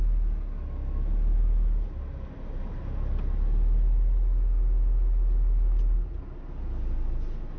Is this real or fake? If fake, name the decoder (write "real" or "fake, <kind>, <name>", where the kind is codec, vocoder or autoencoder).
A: real